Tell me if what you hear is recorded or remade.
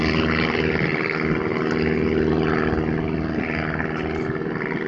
recorded